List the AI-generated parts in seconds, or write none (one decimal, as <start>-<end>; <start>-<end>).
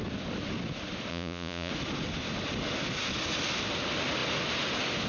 1.1-1.7